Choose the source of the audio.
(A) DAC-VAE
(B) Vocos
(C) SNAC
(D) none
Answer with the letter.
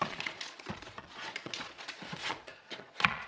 B